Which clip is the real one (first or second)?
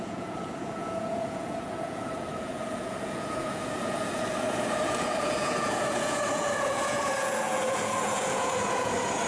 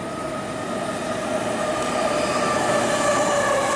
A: second